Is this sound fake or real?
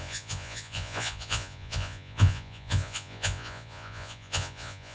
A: fake